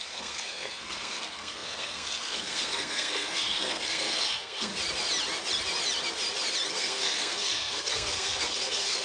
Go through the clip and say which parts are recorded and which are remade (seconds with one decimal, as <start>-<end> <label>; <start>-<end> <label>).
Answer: 0.0-4.7 remade; 4.7-6.7 recorded; 6.7-9.0 remade

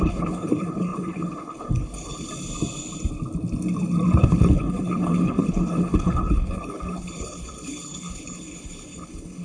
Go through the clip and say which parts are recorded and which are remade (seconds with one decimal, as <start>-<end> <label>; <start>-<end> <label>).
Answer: 0.0-2.3 remade; 2.3-4.2 recorded; 4.2-9.4 remade

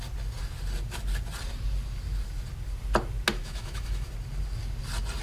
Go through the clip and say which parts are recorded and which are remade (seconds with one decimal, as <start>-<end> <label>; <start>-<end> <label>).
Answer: 0.0-3.4 recorded; 3.4-4.1 remade; 4.1-5.2 recorded

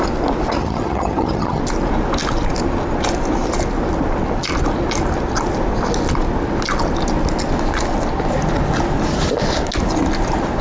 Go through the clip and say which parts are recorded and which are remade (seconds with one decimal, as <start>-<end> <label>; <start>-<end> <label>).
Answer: 0.0-0.6 recorded; 0.6-1.6 remade; 1.6-10.6 recorded